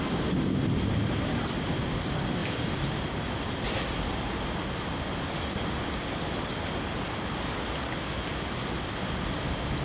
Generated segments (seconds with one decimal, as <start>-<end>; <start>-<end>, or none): 2.4-4.1